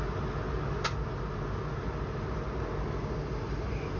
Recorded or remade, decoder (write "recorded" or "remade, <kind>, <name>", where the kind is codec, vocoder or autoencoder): recorded